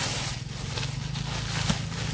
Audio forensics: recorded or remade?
recorded